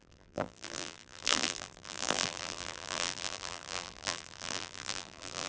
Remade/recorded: remade